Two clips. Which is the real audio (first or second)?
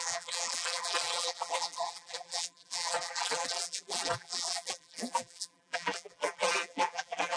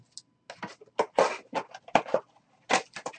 second